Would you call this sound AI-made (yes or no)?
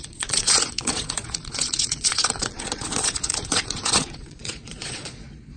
yes